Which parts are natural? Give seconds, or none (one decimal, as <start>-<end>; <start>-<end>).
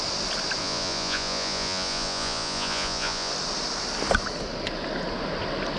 0.0-0.6; 3.3-5.8